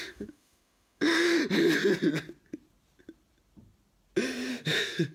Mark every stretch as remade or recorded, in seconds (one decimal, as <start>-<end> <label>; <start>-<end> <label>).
0.0-1.4 remade; 1.4-4.5 recorded; 4.5-5.1 remade